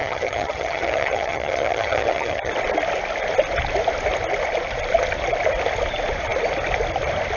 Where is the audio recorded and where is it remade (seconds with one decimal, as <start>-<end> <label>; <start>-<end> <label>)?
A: 0.0-2.5 remade; 2.5-7.4 recorded